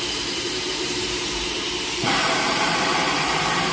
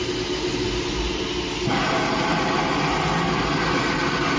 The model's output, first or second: first